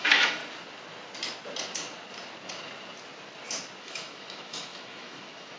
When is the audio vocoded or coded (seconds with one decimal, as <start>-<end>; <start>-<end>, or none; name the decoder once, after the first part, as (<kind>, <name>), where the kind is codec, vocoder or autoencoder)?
0.0-0.4 (autoencoder, DAC-VAE); 3.8-5.6